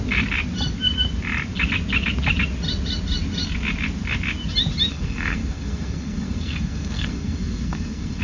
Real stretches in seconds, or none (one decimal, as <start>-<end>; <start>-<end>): 0.0-4.9